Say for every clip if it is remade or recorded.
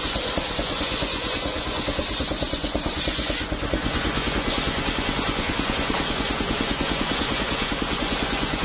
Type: remade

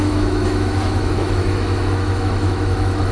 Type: remade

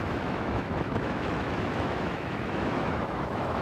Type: remade